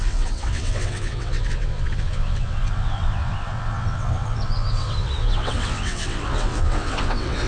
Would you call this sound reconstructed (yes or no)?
yes